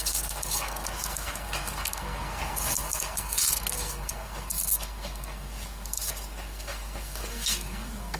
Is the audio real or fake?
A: fake